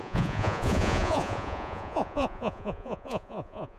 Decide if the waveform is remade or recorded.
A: remade